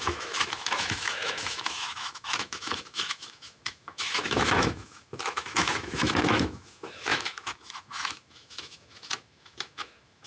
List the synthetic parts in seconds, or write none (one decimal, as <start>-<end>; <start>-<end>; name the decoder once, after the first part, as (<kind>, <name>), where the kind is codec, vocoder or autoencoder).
0.0-10.3 (autoencoder, DAC-VAE)